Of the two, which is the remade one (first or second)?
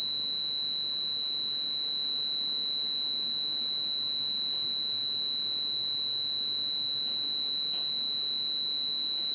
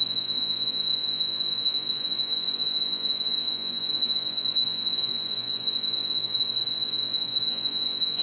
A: second